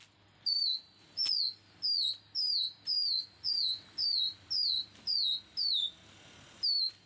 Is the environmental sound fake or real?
real